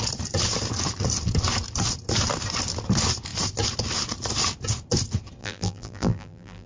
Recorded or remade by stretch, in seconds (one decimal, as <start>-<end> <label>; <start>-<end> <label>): 0.0-5.4 recorded; 5.4-6.7 remade